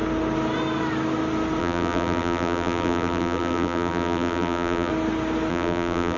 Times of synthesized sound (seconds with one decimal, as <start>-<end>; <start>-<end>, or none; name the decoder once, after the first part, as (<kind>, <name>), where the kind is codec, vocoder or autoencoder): 1.6-4.9 (vocoder, BigVGAN v2); 5.5-6.2